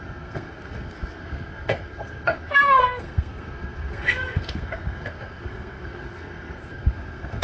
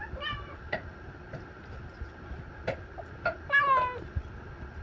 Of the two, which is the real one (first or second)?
second